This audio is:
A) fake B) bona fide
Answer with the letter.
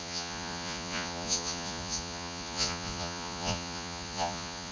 A